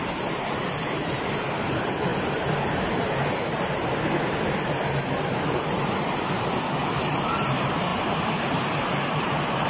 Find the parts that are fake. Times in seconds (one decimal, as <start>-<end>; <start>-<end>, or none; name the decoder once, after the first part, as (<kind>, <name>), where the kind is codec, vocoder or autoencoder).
0.0-9.7 (vocoder, BigVGAN v2)